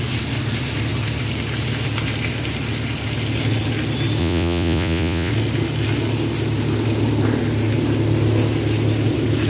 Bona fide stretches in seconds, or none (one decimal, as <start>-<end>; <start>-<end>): 0.0-4.2; 5.3-9.5